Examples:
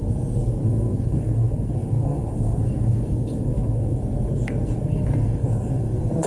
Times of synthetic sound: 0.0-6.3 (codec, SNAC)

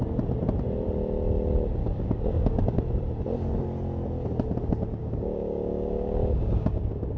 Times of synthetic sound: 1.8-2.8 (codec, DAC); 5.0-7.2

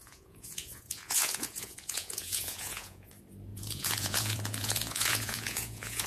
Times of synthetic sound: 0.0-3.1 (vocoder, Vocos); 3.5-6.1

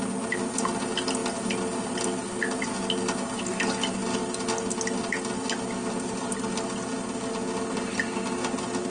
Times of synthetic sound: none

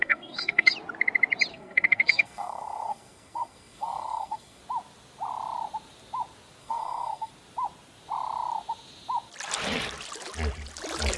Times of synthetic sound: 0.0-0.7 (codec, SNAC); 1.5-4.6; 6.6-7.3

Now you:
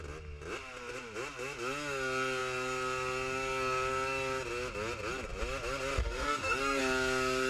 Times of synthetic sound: 6.0-6.8 (codec, DAC)

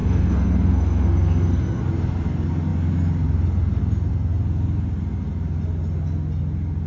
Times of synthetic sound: 0.0-1.8 (codec, SNAC)